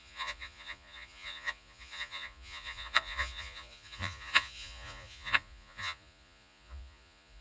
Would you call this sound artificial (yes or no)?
yes